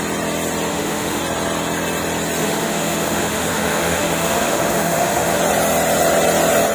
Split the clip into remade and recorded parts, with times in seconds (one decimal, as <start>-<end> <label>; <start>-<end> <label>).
0.0-0.7 recorded; 0.7-1.2 remade; 1.2-2.4 recorded; 2.4-5.4 remade; 5.4-6.7 recorded